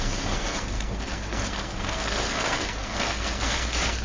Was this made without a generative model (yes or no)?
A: no